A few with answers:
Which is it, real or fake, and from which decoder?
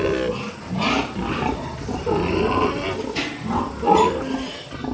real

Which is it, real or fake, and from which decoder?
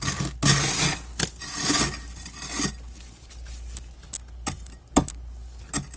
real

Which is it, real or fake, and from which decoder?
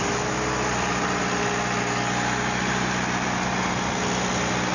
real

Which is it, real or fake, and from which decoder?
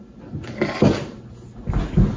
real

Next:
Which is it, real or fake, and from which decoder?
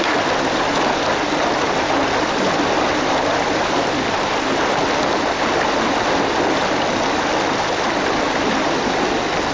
real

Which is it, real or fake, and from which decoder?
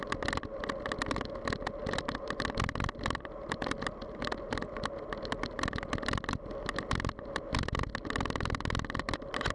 real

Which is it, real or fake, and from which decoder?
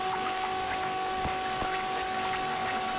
fake, codec, DAC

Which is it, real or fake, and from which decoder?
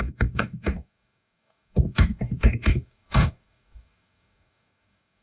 fake, codec, DAC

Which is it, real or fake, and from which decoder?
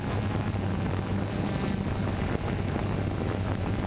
real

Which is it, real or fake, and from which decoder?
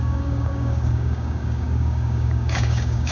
fake, codec, DAC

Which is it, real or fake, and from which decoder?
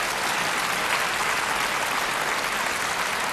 real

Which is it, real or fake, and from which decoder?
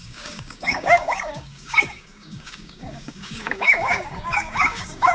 fake, codec, DAC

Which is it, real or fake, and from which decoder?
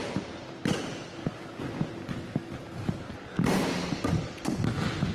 real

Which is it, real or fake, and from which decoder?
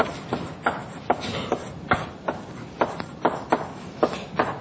real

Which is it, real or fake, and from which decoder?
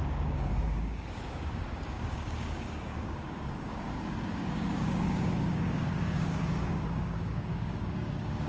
fake, codec, DAC